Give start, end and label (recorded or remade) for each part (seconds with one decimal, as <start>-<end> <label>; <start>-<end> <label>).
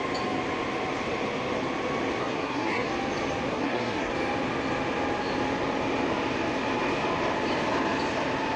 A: 0.0-2.2 recorded; 2.2-2.9 remade; 2.9-3.5 recorded; 3.5-4.1 remade; 4.1-8.6 recorded